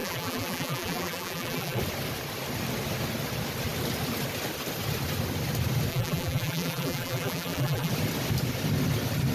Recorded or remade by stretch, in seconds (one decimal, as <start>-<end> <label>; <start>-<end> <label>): 0.0-1.8 remade; 1.8-5.9 recorded; 5.9-7.9 remade; 7.9-9.3 recorded